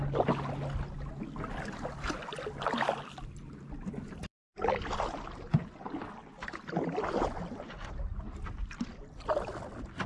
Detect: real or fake real